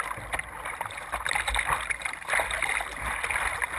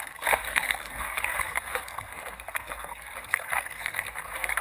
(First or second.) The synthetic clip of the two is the second